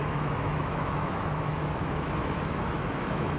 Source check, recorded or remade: remade